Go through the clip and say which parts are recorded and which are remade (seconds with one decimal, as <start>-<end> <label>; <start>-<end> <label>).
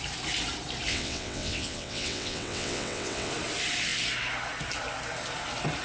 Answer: 0.0-0.9 recorded; 0.9-3.3 remade; 3.3-5.8 recorded